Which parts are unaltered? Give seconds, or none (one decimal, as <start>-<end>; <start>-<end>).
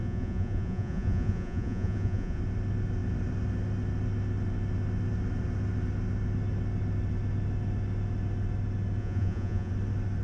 2.4-9.0; 9.7-10.2